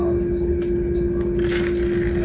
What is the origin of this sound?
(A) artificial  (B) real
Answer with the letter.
B